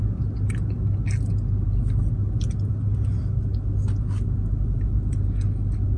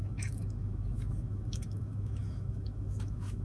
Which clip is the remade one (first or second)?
second